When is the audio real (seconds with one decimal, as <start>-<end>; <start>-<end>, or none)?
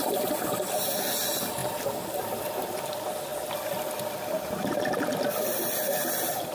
0.0-6.5